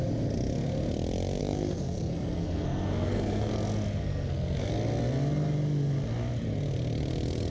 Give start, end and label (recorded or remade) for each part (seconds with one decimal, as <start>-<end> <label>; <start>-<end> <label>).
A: 0.0-1.4 recorded; 1.4-3.5 remade; 3.5-4.0 recorded; 4.0-4.7 remade; 4.7-7.5 recorded